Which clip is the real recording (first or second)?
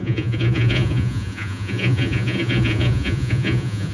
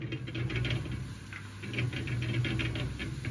second